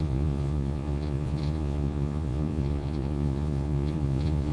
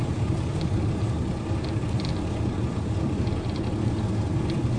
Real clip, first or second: second